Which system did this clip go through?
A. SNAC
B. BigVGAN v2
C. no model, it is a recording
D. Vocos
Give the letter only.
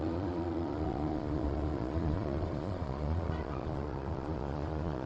D